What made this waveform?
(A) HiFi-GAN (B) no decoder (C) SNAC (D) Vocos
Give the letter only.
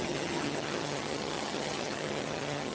A